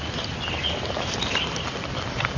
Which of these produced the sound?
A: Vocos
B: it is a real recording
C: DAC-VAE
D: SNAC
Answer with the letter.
B